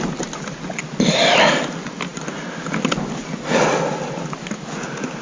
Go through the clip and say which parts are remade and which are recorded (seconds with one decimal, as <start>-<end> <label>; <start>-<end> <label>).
0.0-5.2 recorded